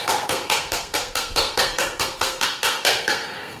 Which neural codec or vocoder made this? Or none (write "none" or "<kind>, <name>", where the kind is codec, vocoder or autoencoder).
codec, SNAC